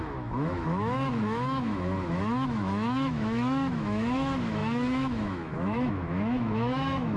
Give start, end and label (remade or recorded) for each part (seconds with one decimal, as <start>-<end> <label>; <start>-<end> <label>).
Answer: 0.0-7.2 remade